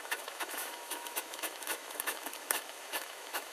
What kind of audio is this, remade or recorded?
remade